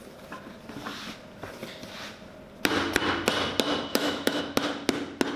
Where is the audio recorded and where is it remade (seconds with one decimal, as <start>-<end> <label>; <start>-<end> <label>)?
0.0-3.9 recorded; 3.9-4.4 remade; 4.4-5.4 recorded